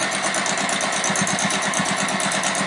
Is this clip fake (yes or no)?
no